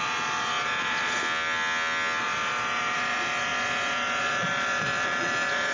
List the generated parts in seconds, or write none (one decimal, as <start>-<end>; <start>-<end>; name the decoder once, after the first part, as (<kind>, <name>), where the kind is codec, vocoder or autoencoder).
0.0-1.2 (vocoder, Vocos); 2.2-5.7